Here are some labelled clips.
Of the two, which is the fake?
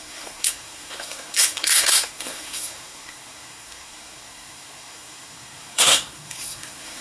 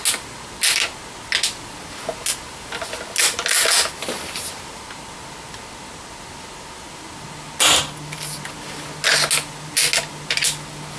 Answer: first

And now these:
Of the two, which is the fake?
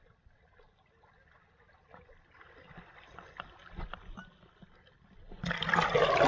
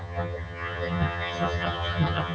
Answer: second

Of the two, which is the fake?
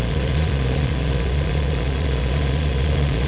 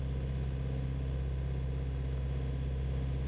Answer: first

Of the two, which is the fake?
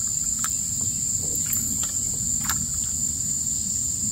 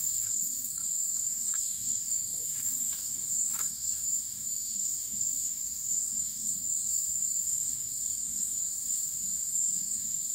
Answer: second